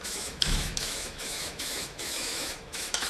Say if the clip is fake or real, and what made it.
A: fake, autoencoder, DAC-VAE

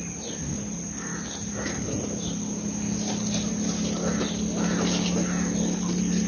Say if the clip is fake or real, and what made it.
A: real